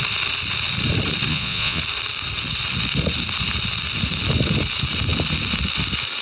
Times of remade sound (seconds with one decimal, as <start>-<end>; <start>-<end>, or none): 1.3-1.8